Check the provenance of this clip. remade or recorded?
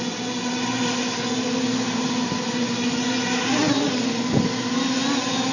recorded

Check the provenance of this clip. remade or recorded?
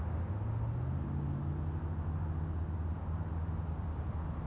recorded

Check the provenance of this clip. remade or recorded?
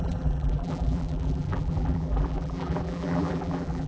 remade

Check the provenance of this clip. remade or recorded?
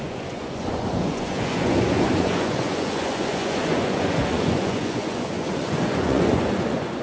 remade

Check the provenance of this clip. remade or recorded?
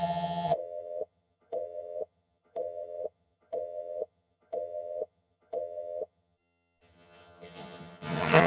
remade